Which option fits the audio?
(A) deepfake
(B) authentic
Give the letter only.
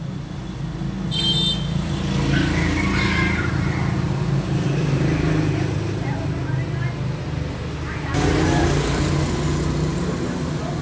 B